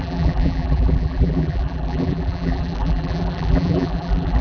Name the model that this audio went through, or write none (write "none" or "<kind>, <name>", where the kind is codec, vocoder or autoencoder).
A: vocoder, BigVGAN v2